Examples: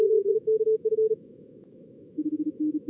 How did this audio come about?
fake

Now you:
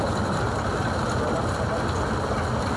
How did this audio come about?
real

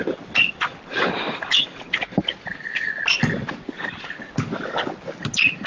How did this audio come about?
real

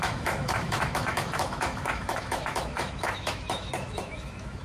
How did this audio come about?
fake